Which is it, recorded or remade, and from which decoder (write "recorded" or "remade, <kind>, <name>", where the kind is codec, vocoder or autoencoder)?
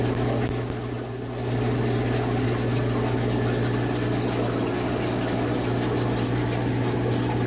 recorded